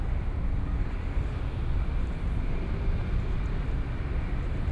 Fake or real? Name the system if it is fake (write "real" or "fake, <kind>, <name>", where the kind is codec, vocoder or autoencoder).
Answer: real